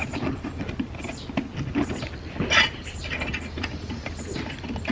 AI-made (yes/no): no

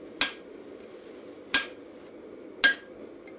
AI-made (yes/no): no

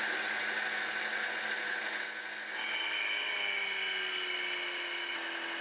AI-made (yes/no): no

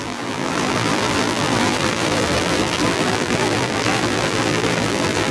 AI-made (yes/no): yes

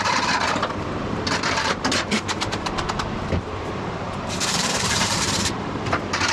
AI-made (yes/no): yes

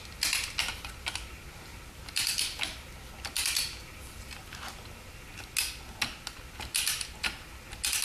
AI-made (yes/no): no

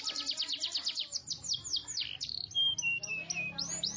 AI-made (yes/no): no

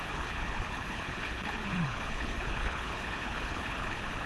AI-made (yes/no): yes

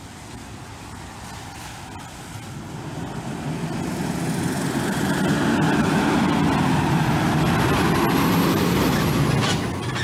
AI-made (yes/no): no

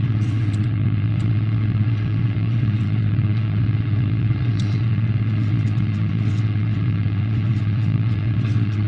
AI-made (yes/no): yes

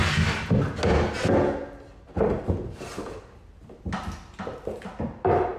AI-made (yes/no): no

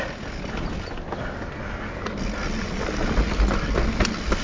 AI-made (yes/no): no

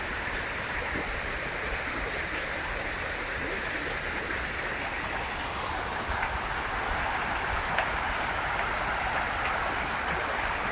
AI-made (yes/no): no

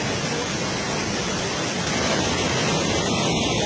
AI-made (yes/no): no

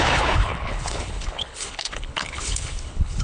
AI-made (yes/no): yes